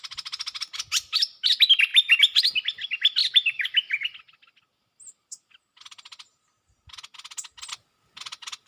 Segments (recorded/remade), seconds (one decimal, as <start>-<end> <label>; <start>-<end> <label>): 0.0-3.2 recorded; 3.2-6.4 remade; 6.4-8.7 recorded